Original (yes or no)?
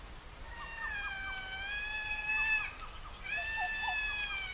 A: yes